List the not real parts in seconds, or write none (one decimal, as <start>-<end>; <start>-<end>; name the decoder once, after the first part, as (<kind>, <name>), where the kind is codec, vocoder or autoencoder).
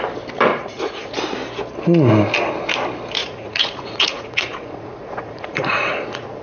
0.5-1.1 (vocoder, Vocos); 3.2-6.4